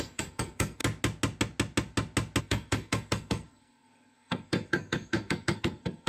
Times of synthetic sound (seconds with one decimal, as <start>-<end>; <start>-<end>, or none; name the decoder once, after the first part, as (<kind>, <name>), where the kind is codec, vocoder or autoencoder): 0.0-0.8 (codec, SNAC); 2.4-6.1